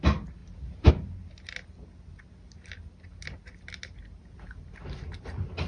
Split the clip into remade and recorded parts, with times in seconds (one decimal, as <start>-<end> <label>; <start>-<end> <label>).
0.0-5.7 recorded